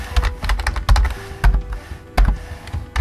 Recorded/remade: recorded